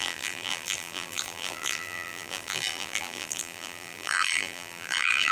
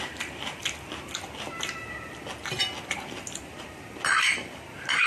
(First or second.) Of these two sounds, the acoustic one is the second